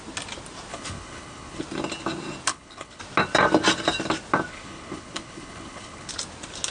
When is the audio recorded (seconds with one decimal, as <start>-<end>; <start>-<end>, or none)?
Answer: 0.0-0.7; 1.6-2.5; 3.0-4.5; 6.1-6.7